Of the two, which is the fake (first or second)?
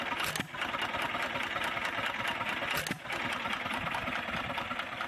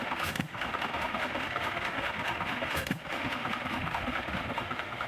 second